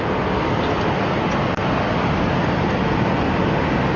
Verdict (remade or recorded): recorded